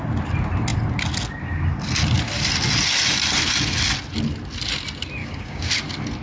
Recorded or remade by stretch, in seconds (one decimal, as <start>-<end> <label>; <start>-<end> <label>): 0.0-5.2 recorded; 5.2-5.7 remade; 5.7-6.2 recorded